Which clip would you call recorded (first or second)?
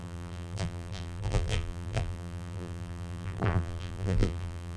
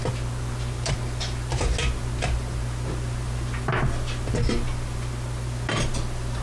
second